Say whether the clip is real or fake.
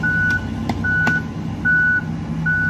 real